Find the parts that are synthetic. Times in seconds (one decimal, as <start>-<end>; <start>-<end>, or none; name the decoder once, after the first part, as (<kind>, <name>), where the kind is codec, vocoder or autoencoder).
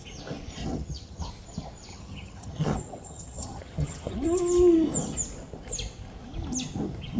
0.6-1.2 (vocoder, HiFi-GAN); 1.9-4.4